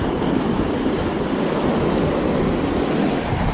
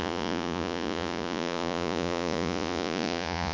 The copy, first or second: second